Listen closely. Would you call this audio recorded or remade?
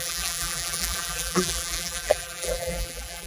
remade